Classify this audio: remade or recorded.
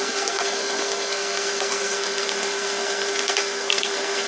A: remade